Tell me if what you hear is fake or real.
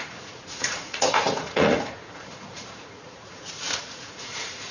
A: fake